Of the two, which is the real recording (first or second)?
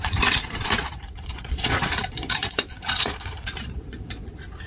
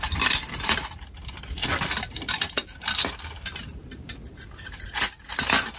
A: second